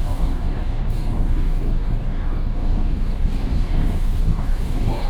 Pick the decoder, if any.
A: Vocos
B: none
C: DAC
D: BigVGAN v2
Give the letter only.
C